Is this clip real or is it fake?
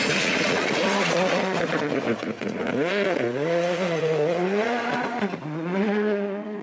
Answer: fake